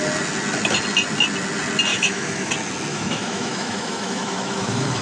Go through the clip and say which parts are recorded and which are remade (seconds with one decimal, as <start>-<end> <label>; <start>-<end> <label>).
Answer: 0.0-1.9 recorded; 1.9-2.5 remade; 2.5-2.9 recorded; 2.9-5.0 remade